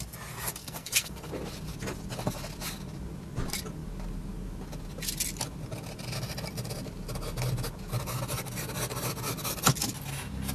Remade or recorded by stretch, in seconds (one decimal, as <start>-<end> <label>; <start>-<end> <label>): 0.0-0.6 recorded; 0.6-1.3 remade; 1.3-10.5 recorded